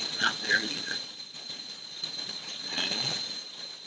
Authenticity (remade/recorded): remade